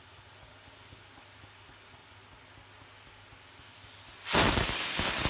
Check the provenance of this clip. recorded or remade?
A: recorded